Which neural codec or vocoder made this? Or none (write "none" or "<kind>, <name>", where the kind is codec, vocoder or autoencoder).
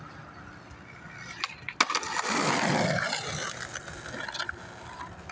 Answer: none